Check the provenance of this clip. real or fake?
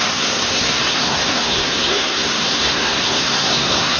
fake